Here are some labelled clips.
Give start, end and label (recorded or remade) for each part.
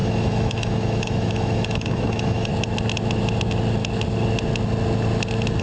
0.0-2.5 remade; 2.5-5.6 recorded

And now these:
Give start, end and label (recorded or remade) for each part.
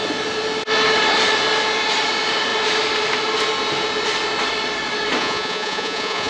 0.0-5.2 recorded; 5.2-6.3 remade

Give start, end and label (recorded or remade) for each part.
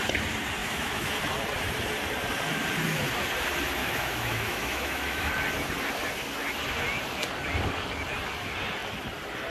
0.0-0.6 recorded; 0.6-1.2 remade; 1.2-3.8 recorded; 3.8-5.3 remade; 5.3-9.5 recorded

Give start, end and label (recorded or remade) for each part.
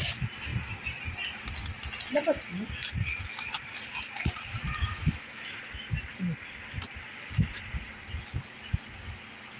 0.0-4.9 recorded; 4.9-5.6 remade; 5.6-9.6 recorded